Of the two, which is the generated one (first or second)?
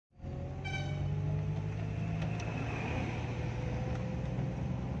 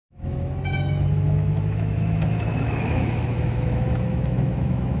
second